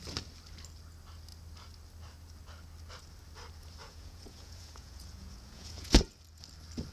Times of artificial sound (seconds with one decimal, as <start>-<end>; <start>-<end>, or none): 3.8-5.9